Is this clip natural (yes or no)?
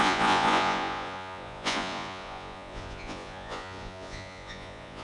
no